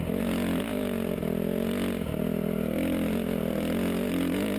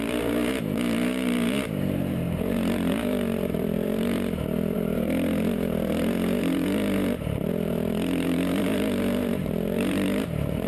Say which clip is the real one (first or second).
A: first